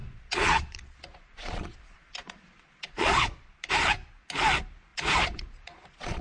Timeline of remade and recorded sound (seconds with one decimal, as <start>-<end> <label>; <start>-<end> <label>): 0.0-3.7 remade; 3.7-4.9 recorded; 4.9-6.2 remade